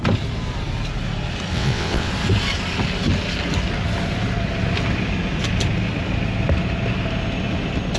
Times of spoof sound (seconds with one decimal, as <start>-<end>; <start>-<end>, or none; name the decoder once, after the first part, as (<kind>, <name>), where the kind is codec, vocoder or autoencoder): 1.5-2.1 (vocoder, WaveNeXt)